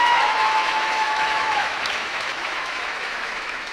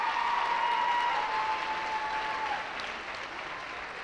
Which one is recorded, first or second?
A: second